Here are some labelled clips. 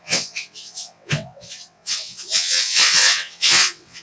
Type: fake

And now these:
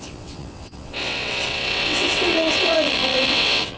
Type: fake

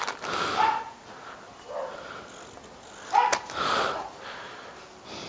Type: real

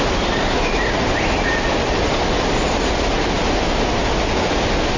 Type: real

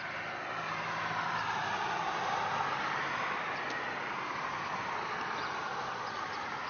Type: real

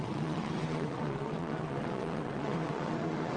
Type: fake